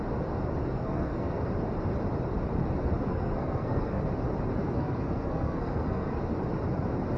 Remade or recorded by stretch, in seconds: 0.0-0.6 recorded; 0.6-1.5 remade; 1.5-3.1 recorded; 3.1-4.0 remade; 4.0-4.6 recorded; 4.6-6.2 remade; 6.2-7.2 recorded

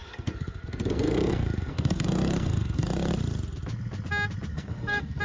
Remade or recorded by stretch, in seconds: 0.0-3.1 remade; 3.1-4.5 recorded; 4.5-5.2 remade

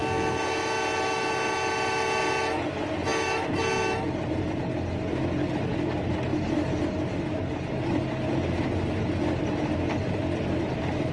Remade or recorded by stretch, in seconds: 0.0-11.1 recorded

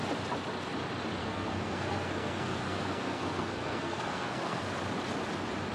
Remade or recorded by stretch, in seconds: 0.0-1.2 recorded; 1.2-4.6 remade; 4.6-5.7 recorded

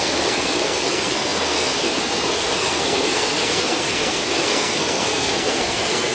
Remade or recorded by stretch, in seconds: 0.0-6.1 remade